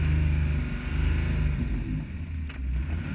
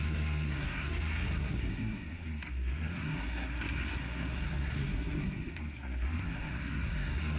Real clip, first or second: first